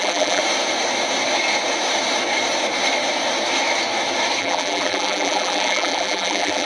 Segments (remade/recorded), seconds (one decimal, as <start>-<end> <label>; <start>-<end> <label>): 0.0-0.4 remade; 0.4-4.4 recorded; 4.4-6.7 remade